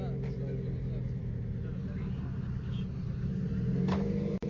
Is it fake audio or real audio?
real